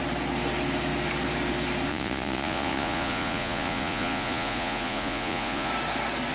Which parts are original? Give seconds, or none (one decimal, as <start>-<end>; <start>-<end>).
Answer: 0.0-1.9; 5.7-6.3